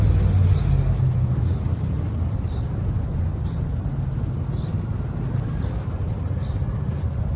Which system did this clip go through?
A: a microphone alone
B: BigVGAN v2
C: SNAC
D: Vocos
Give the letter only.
A